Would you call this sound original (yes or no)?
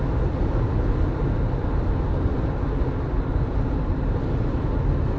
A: yes